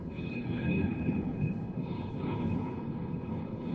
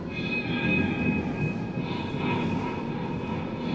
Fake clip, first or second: first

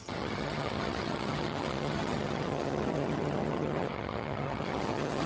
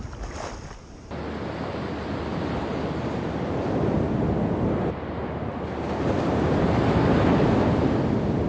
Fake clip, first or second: first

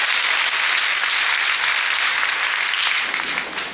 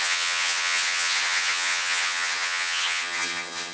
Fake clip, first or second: second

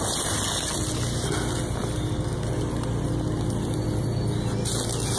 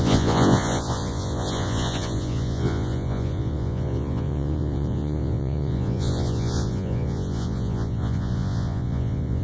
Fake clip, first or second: second